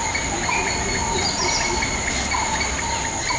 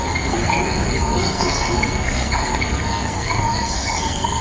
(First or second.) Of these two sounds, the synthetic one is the second